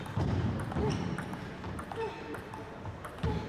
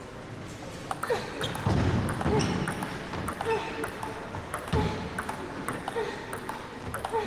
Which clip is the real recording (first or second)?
second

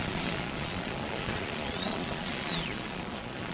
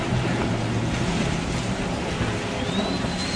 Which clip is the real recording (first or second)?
second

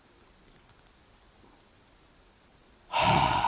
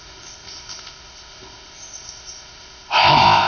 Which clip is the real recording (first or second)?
first